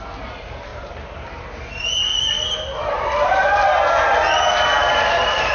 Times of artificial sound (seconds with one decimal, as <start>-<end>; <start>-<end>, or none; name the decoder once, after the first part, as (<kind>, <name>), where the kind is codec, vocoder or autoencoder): 0.0-2.1 (vocoder, BigVGAN v2); 2.8-3.6; 4.9-5.5